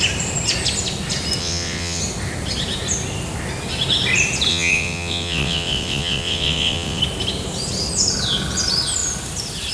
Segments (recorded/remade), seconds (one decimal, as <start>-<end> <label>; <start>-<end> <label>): 0.0-1.4 recorded; 1.4-2.0 remade; 2.0-4.5 recorded; 4.5-7.0 remade; 7.0-9.7 recorded